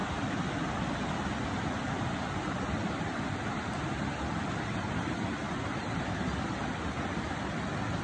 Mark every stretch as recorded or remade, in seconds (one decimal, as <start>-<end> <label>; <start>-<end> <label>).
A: 0.0-8.0 recorded